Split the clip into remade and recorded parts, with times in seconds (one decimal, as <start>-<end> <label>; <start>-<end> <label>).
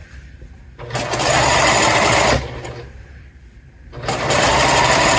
0.0-5.2 recorded